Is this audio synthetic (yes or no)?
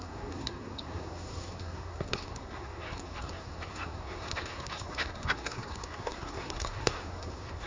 yes